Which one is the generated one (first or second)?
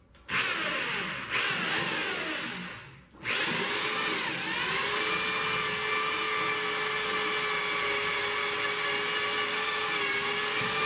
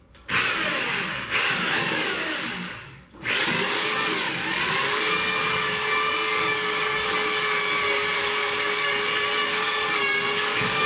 second